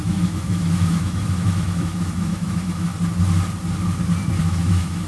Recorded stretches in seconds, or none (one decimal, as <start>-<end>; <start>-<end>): 2.9-4.4